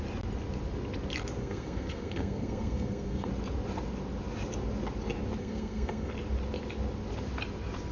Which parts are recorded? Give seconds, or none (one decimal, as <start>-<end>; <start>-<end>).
0.0-1.4; 3.3-5.4; 6.1-7.9